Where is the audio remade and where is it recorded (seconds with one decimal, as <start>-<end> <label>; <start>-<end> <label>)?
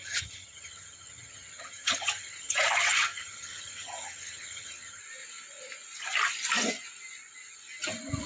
0.0-5.0 remade; 5.0-8.3 recorded